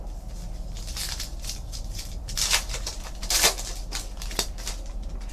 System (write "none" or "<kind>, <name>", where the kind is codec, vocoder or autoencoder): none